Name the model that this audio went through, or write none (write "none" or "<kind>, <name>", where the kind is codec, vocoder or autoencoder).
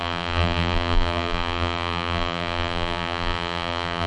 vocoder, BigVGAN v2